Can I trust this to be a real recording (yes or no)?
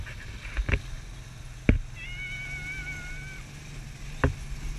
yes